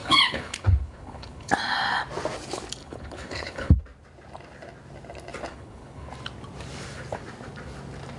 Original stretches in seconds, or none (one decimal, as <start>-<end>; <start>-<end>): 1.5-2.8; 3.8-5.5; 6.1-8.2